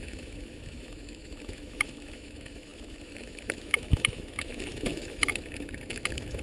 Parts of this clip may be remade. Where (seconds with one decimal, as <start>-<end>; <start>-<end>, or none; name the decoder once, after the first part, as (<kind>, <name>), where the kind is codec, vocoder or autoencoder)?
0.0-6.4 (autoencoder, DAC-VAE)